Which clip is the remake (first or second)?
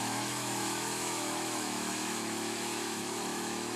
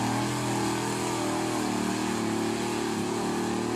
first